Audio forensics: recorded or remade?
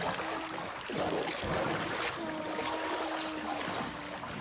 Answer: recorded